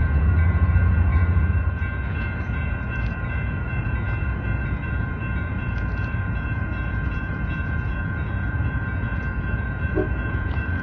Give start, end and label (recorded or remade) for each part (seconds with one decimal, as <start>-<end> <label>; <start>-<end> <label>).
0.0-10.8 remade